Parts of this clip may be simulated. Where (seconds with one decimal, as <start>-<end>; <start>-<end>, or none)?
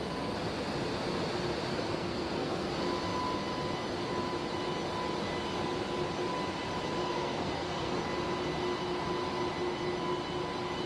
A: 1.7-2.7; 7.0-8.0